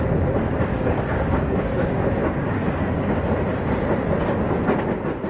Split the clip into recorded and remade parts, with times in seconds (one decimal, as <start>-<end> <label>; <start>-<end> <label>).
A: 0.0-0.7 recorded; 0.7-3.2 remade; 3.2-5.3 recorded